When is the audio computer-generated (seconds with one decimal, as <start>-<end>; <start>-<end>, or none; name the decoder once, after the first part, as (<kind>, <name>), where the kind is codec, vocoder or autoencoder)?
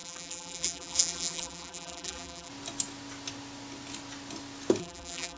0.0-2.5 (vocoder, BigVGAN v2); 4.8-5.4